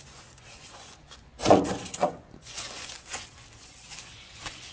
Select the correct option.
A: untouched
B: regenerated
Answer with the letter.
B